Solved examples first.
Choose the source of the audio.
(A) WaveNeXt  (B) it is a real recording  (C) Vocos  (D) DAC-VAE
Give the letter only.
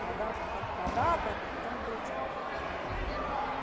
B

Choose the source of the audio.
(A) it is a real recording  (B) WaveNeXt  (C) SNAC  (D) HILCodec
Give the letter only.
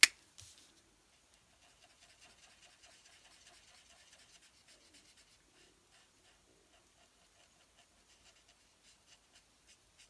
A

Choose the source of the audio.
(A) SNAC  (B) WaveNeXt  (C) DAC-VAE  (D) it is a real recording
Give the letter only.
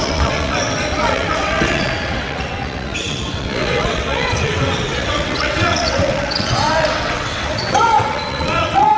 B